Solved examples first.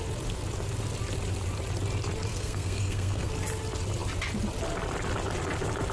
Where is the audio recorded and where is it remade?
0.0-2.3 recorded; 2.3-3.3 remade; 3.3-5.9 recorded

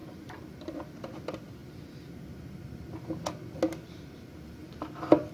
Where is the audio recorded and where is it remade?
0.0-5.3 recorded